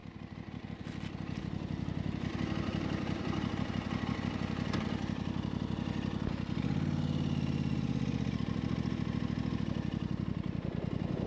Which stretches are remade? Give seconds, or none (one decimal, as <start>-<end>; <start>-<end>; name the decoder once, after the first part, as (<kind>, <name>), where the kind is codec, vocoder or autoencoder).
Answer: 0.0-1.4 (vocoder, BigVGAN v2); 2.7-3.5